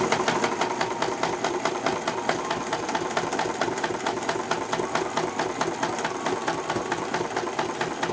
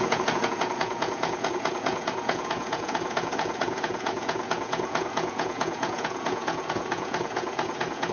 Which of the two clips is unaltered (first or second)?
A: first